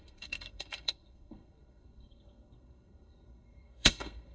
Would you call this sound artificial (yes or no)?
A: yes